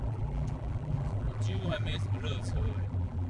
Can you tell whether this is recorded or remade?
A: remade